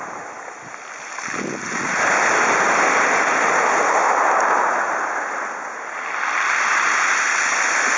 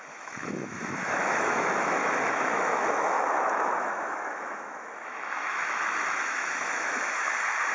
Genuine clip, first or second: first